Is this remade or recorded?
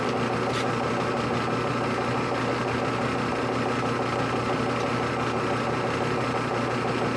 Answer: recorded